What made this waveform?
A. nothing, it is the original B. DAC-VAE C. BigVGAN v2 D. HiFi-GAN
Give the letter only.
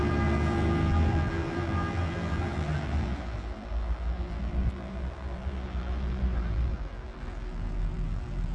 C